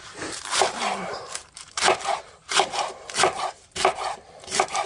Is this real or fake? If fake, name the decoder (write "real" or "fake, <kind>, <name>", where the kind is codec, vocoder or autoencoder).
fake, vocoder, BigVGAN v2